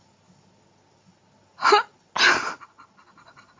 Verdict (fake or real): real